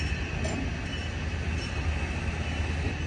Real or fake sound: real